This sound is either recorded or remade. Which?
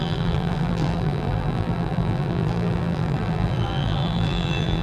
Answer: remade